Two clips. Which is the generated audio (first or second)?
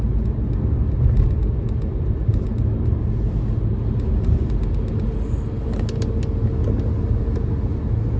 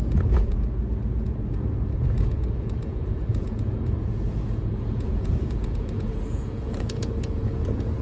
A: second